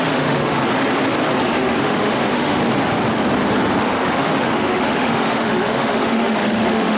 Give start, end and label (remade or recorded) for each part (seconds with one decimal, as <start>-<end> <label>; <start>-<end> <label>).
0.0-0.6 remade; 0.6-1.5 recorded; 1.5-2.6 remade; 2.6-3.8 recorded; 3.8-7.0 remade